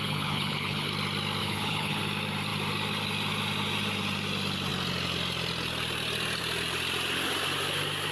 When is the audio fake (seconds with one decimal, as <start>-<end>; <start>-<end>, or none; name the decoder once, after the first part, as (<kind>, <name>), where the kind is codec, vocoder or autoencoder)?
0.0-0.9 (codec, HILCodec); 1.4-2.0